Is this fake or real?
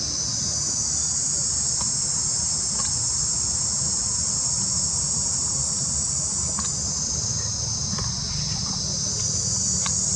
real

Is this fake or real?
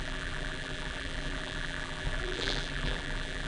fake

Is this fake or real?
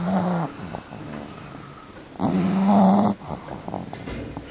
real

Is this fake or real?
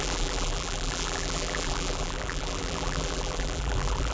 fake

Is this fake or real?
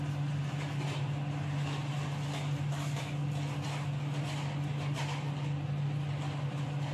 real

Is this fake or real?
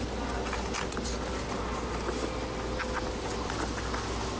real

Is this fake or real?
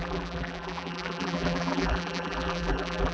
fake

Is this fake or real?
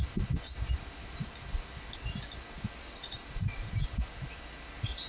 real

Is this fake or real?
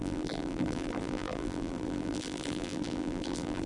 fake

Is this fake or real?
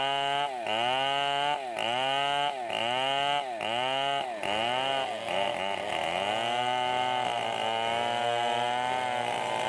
real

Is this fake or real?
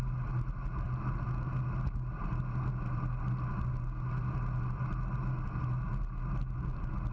real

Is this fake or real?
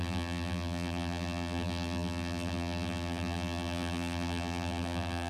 fake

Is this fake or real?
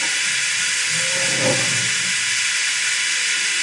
real